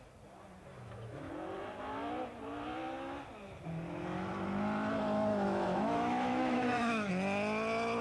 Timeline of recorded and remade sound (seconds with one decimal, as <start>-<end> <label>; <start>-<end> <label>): 0.0-0.7 recorded; 0.7-1.3 remade; 1.3-5.3 recorded; 5.3-7.1 remade; 7.1-8.0 recorded